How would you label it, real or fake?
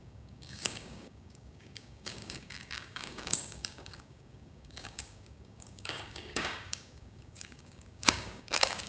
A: fake